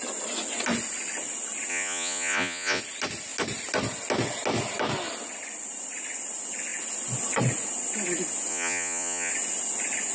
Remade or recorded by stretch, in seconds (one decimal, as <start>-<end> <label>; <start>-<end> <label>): 0.0-1.7 recorded; 1.7-2.8 remade; 2.8-8.5 recorded; 8.5-9.3 remade; 9.3-10.1 recorded